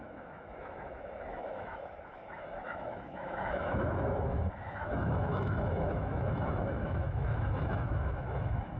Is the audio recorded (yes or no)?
no